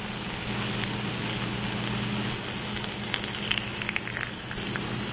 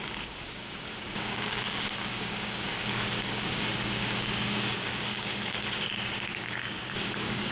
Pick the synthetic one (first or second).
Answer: second